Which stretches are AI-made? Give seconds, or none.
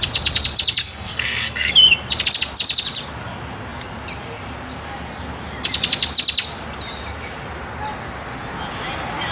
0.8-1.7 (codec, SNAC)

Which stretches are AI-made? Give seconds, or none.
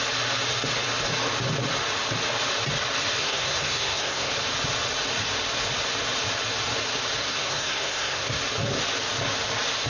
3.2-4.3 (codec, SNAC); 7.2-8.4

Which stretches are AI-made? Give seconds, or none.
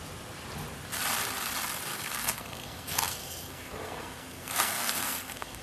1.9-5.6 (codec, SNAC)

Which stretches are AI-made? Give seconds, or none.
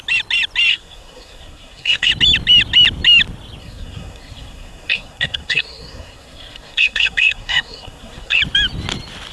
0.7-2.1 (codec, SNAC); 3.6-8.4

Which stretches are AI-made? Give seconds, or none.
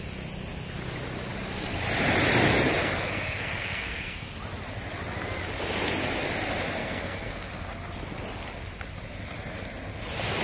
2.8-4.3 (codec, SNAC); 6.8-7.5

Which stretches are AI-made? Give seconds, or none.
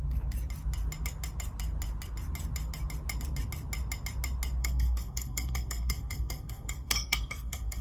4.6-7.8 (codec, SNAC)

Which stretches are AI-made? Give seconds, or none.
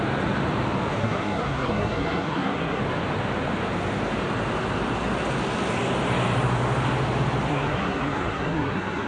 1.0-2.8 (codec, SNAC); 7.5-9.1